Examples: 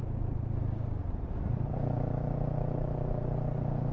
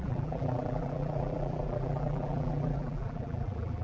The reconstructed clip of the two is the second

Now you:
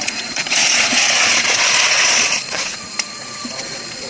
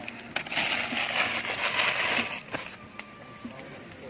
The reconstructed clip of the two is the first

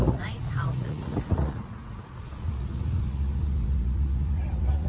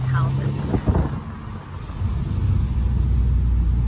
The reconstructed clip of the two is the first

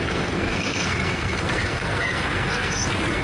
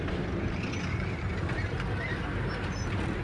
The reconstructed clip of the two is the first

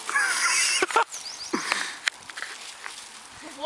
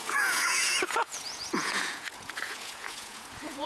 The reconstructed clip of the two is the second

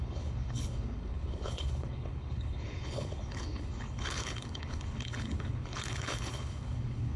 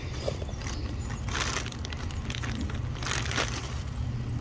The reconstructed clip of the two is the first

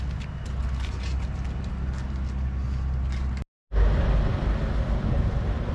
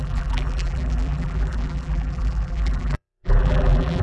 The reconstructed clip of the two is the second